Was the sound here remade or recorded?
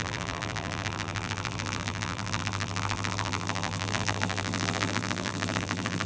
remade